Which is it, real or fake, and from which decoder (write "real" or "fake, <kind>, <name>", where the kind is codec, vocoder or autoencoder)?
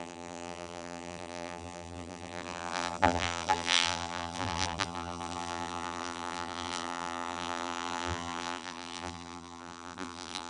fake, vocoder, BigVGAN v2